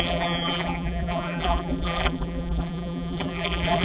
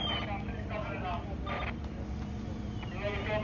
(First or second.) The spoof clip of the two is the first